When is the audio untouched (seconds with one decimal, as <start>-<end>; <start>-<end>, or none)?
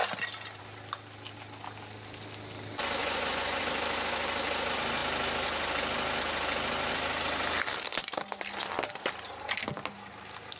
0.0-3.0; 3.6-10.6